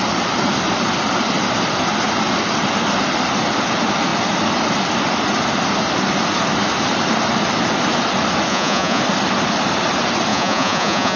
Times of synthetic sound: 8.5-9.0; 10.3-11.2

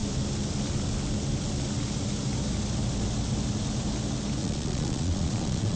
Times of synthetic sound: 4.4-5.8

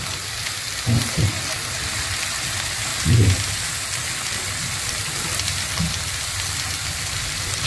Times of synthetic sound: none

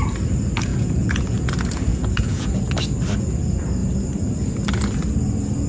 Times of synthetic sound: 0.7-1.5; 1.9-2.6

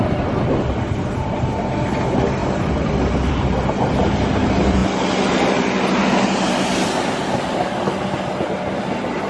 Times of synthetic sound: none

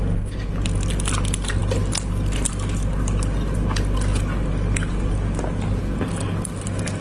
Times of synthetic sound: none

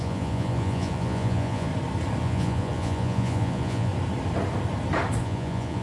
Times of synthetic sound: 0.0-1.7; 2.2-3.9; 5.2-5.8